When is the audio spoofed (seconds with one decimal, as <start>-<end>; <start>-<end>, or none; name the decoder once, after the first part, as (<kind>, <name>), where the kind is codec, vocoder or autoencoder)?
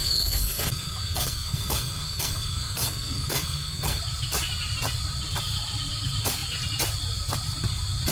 0.0-4.0 (codec, SNAC)